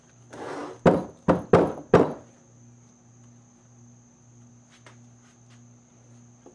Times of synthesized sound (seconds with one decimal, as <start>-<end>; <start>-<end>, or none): none